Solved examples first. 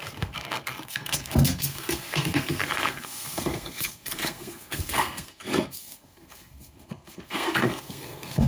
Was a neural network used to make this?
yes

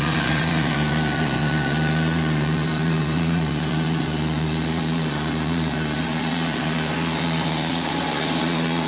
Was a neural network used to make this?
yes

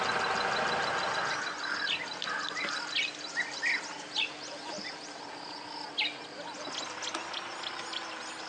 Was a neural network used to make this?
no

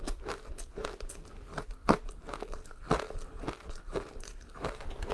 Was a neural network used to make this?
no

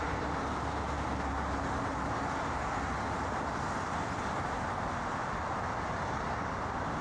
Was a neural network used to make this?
no